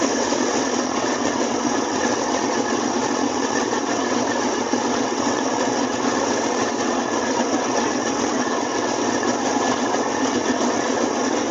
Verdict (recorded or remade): remade